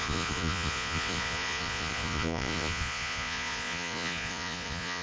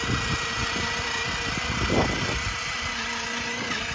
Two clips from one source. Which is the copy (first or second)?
first